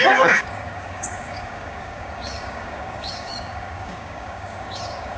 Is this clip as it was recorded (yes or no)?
no